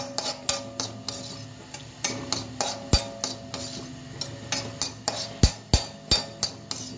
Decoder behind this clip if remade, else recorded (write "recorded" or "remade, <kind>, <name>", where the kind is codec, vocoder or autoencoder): recorded